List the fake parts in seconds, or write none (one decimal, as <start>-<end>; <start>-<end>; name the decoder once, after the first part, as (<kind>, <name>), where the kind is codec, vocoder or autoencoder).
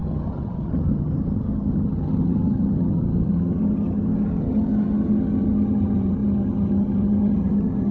0.0-7.9 (vocoder, HiFi-GAN)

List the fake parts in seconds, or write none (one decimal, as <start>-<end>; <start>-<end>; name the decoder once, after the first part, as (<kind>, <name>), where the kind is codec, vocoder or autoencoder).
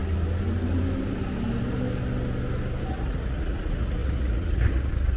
2.9-5.2 (vocoder, Vocos)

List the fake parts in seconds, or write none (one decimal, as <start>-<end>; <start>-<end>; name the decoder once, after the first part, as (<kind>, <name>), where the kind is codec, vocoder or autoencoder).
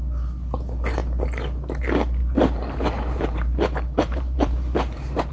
2.2-5.3 (vocoder, BigVGAN v2)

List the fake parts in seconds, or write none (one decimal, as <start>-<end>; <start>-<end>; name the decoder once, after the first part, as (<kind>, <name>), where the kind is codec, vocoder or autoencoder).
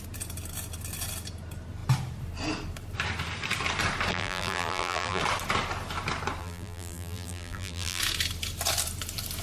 4.1-5.2 (vocoder, BigVGAN v2); 6.4-8.0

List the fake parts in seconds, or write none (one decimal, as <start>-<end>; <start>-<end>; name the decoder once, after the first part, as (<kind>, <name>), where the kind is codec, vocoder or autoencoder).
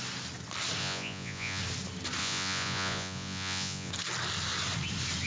0.8-1.6 (vocoder, Vocos); 2.2-3.9